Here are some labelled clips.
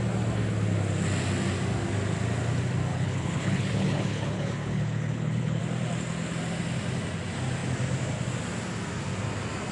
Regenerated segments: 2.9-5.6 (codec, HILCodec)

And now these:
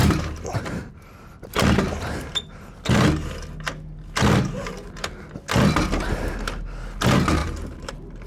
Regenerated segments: 0.0-0.9 (vocoder, BigVGAN v2); 7.4-7.9